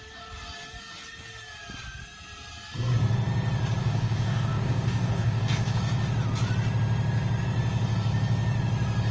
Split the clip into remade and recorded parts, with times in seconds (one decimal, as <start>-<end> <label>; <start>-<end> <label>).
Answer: 0.0-3.8 recorded; 3.8-5.8 remade; 5.8-9.1 recorded